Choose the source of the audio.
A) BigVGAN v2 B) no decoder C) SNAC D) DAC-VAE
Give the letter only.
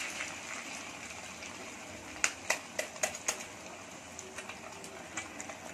B